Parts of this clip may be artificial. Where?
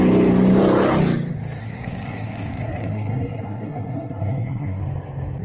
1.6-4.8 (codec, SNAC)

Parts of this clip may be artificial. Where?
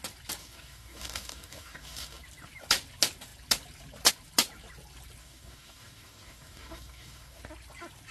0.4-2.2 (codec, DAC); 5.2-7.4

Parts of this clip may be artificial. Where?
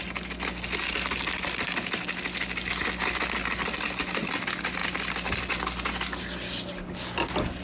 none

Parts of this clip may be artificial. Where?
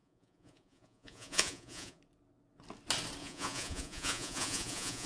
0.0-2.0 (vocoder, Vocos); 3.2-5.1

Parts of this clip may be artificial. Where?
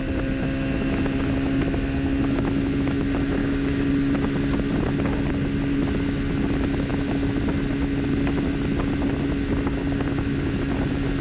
3.4-3.9 (codec, DAC)